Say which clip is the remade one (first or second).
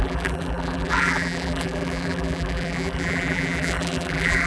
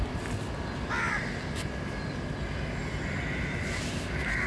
first